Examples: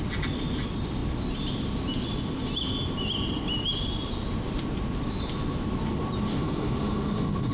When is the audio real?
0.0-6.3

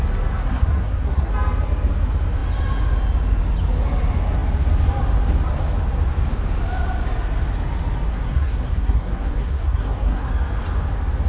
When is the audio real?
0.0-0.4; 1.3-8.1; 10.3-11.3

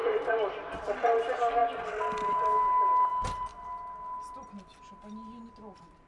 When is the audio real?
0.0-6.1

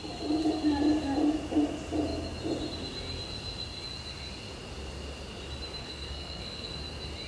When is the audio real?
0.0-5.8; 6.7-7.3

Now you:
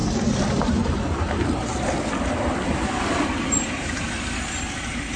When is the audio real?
0.0-5.2

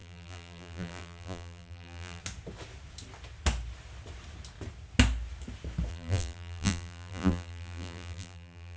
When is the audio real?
2.2-5.9